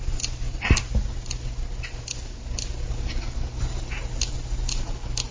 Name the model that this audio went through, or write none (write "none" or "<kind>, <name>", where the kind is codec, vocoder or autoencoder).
none